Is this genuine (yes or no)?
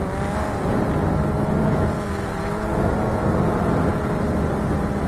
yes